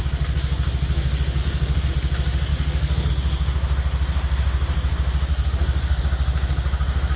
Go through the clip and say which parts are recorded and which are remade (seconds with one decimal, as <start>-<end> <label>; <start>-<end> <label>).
0.0-1.4 recorded; 1.4-1.9 remade; 1.9-2.5 recorded; 2.5-3.1 remade; 3.1-5.3 recorded; 5.3-6.0 remade; 6.0-7.2 recorded